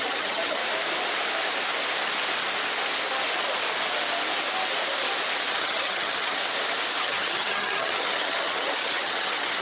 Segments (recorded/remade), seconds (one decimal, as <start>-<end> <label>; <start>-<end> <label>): 0.0-0.6 remade; 0.6-5.5 recorded; 5.5-6.4 remade; 6.4-7.0 recorded; 7.0-9.6 remade